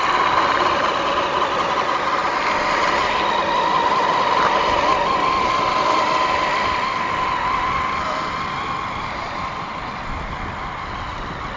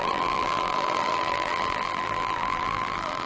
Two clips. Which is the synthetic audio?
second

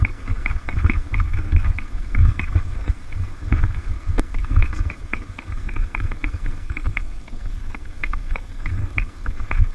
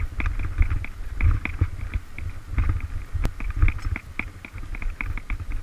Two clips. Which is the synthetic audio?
first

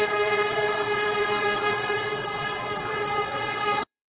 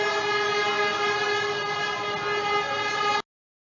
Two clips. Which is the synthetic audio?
first